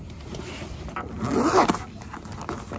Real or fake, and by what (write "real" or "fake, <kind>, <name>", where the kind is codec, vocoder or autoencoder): real